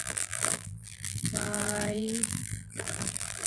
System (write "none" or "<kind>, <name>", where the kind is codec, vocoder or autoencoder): vocoder, BigVGAN v2